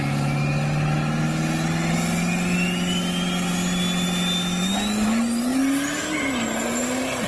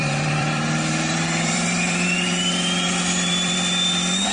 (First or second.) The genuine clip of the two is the first